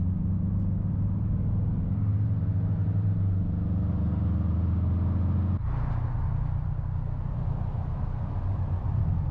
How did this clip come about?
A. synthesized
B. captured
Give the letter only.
B